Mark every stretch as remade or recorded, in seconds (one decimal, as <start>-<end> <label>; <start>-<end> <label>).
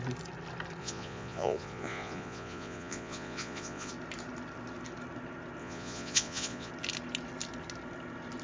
0.0-0.8 recorded; 0.8-3.9 remade; 3.9-5.6 recorded; 5.6-6.7 remade; 6.7-8.4 recorded